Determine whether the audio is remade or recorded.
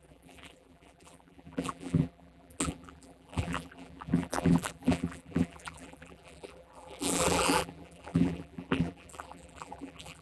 remade